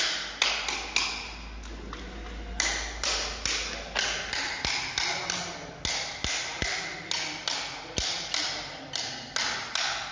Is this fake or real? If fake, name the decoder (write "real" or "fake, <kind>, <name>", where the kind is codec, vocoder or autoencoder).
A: real